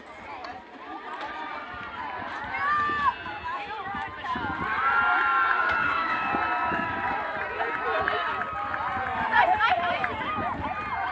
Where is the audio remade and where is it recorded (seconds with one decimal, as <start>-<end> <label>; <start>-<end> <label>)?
0.0-5.8 recorded; 5.8-6.3 remade; 6.3-11.1 recorded